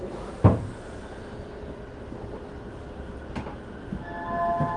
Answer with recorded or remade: recorded